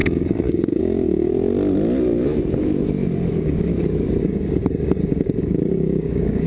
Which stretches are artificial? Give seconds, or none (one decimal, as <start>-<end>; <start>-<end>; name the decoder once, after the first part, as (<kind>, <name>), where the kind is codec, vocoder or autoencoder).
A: 0.0-1.3 (codec, DAC); 3.3-3.7; 4.2-6.5